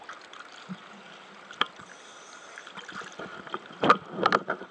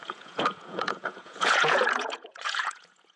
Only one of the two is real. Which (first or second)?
first